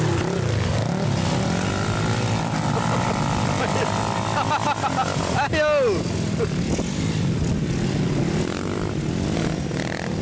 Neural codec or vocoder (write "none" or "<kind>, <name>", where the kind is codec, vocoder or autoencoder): none